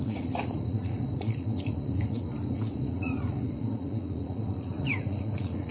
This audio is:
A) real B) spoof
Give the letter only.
B